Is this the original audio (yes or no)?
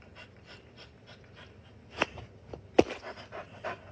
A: yes